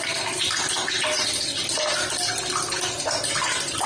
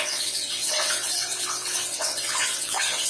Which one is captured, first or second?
first